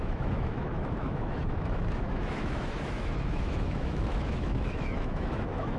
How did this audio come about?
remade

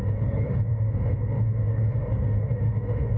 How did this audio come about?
remade